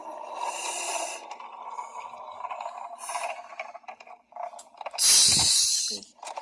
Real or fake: real